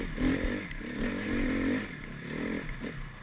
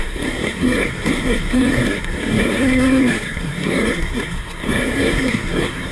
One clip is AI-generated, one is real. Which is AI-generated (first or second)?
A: second